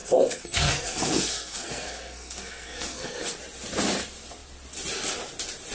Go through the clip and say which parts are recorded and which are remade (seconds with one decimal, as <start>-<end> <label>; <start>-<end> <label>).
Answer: 0.0-3.4 remade; 3.4-5.7 recorded